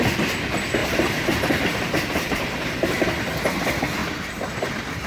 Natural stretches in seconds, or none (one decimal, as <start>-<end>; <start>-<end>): 0.0-0.8; 3.0-4.0